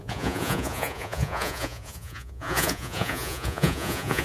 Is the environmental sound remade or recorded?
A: remade